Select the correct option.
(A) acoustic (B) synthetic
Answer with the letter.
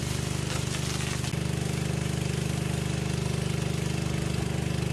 A